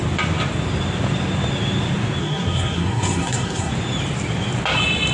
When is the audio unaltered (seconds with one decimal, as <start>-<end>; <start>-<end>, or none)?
0.0-2.2; 3.7-5.1